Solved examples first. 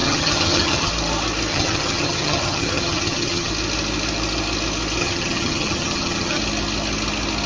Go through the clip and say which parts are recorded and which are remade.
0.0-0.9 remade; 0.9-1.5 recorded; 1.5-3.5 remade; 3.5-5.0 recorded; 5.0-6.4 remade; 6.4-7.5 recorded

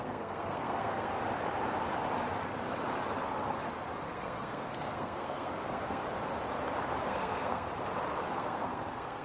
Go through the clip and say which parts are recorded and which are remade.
0.0-1.1 remade; 1.1-4.0 recorded; 4.0-6.0 remade; 6.0-7.0 recorded; 7.0-7.7 remade; 7.7-8.3 recorded; 8.3-9.2 remade

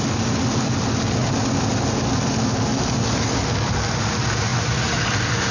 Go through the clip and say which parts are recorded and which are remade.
0.0-5.5 recorded

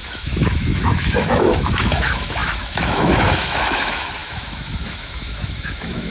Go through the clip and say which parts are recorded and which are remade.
0.0-6.1 remade